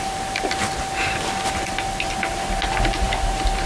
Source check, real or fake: real